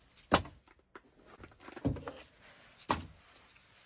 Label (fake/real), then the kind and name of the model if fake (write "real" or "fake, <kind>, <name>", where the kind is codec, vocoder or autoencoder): real